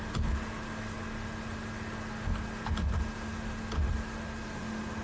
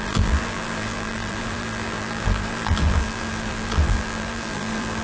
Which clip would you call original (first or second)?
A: first